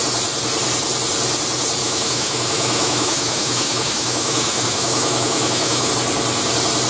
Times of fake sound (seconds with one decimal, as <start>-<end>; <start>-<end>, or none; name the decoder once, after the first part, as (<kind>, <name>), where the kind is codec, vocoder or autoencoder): 1.8-5.9 (autoencoder, DAC-VAE)